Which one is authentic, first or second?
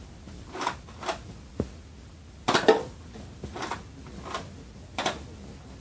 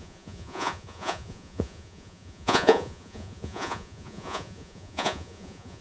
first